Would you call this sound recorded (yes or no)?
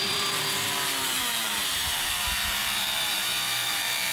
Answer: no